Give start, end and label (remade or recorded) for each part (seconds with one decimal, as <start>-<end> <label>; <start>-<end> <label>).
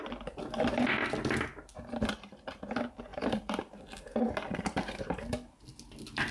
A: 0.0-3.1 recorded; 3.1-3.7 remade; 3.7-4.5 recorded; 4.5-5.6 remade; 5.6-6.3 recorded